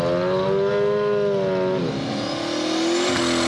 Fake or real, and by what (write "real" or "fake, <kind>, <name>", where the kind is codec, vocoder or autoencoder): real